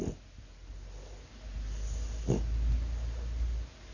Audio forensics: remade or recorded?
recorded